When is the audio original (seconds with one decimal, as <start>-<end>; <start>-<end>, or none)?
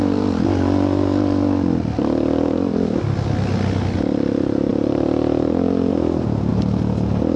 0.0-7.4